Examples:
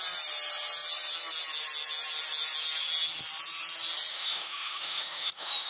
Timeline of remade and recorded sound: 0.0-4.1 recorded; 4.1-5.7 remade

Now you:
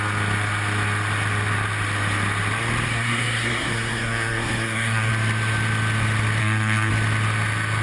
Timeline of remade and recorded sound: 0.0-2.9 recorded; 2.9-5.1 remade; 5.1-6.4 recorded; 6.4-6.9 remade; 6.9-7.8 recorded

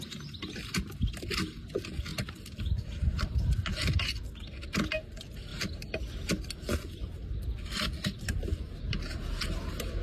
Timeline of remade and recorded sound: 0.0-10.0 recorded

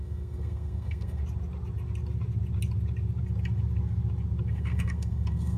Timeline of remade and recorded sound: 0.0-1.2 remade; 1.2-4.5 recorded; 4.5-5.6 remade

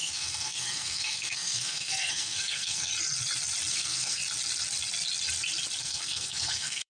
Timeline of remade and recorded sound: 0.0-2.9 remade; 2.9-3.7 recorded; 3.7-4.2 remade; 4.2-5.8 recorded; 5.8-6.9 remade

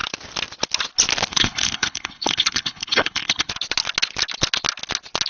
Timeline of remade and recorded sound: 0.0-1.3 recorded; 1.3-3.5 remade; 3.5-5.3 recorded

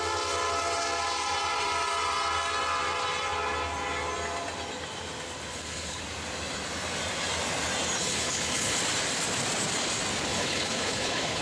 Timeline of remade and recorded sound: 0.0-5.5 recorded; 5.5-6.0 remade; 6.0-8.0 recorded; 8.0-8.8 remade; 8.8-10.3 recorded; 10.3-11.4 remade